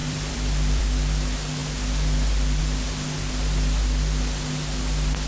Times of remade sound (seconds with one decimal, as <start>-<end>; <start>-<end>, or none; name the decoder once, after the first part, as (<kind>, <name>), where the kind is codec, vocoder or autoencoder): 0.0-0.8 (vocoder, BigVGAN v2)